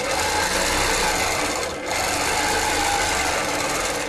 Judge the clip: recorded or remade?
recorded